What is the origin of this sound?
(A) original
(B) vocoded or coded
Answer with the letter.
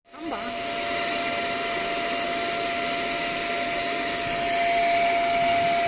A